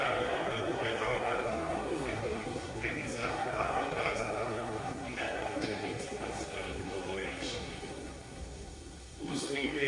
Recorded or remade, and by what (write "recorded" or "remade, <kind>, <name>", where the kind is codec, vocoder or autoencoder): remade, codec, SNAC